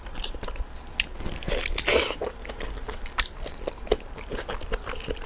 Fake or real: real